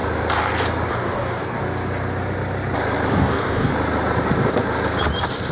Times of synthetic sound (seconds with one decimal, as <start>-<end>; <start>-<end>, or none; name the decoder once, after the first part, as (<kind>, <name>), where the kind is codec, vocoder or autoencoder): 0.9-1.6 (codec, DAC); 3.1-3.7